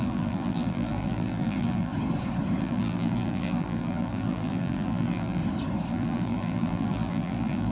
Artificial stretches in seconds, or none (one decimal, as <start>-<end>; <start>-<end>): 0.0-1.9; 2.6-5.4; 5.9-7.7